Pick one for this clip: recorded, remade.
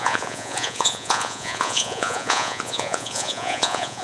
remade